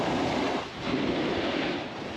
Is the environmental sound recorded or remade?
recorded